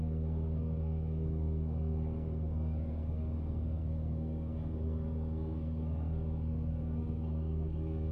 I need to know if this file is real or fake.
fake